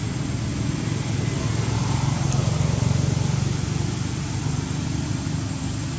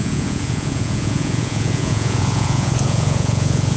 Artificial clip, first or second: second